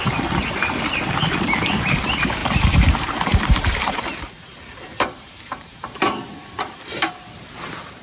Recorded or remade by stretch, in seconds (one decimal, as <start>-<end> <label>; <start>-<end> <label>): 0.0-2.4 recorded; 2.4-7.1 remade; 7.1-8.0 recorded